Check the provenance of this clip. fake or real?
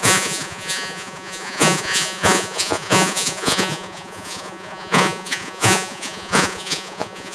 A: fake